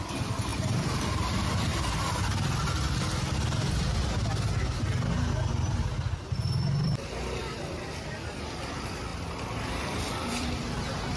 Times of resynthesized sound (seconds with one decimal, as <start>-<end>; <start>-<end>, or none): 0.0-1.7; 6.1-9.1; 9.7-11.2